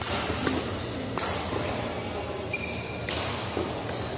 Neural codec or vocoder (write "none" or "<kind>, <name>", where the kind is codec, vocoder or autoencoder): none